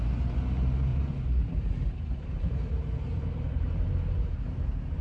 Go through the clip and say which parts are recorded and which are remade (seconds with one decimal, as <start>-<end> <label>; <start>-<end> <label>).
0.0-0.9 recorded; 0.9-3.9 remade; 3.9-5.0 recorded